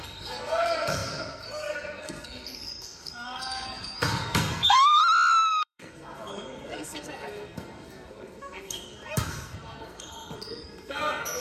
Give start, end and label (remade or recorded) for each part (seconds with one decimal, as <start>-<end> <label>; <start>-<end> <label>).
0.0-5.0 remade; 5.0-5.5 recorded; 5.5-11.4 remade